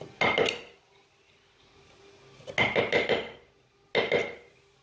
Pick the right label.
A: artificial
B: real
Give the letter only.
B